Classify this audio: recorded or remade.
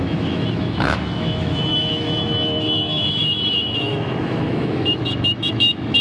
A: remade